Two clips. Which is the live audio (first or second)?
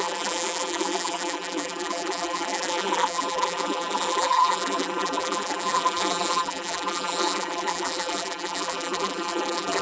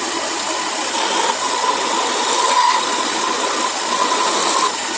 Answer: second